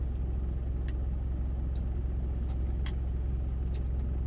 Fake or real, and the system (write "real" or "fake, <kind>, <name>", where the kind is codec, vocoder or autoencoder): real